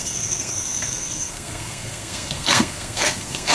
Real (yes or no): no